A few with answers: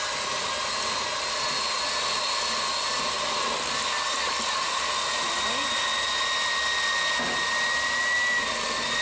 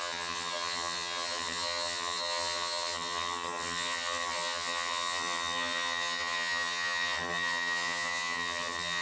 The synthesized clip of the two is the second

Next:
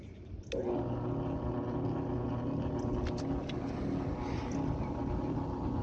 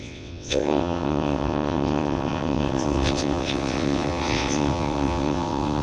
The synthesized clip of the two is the second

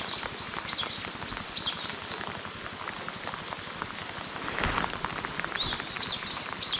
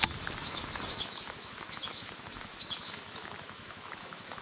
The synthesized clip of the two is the second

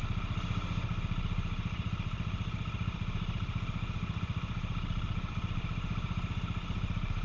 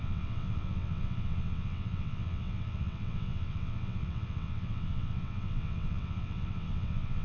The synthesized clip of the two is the second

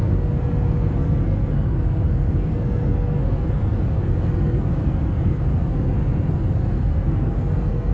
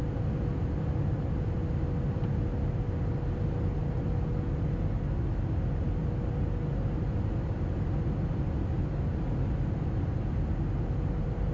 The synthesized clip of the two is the first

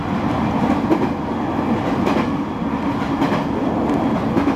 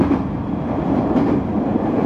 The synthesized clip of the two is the second